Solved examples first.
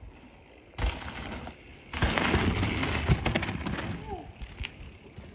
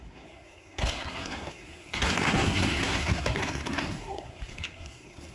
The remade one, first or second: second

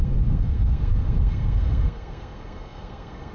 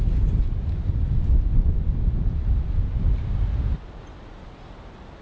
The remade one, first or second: first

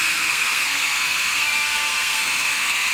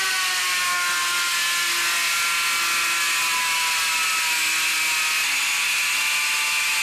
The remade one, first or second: first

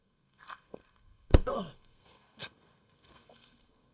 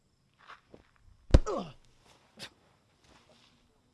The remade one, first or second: first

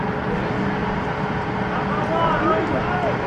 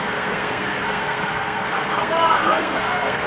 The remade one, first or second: second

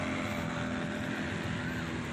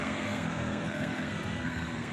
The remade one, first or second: second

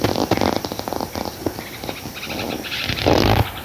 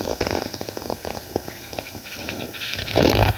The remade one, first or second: second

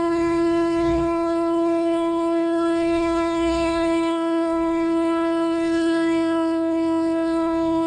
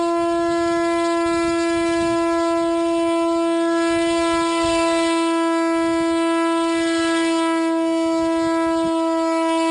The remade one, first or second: first